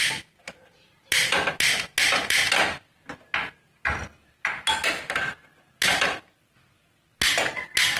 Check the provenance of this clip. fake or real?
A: real